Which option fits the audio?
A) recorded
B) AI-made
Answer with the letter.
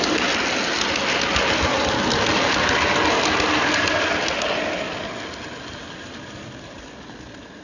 A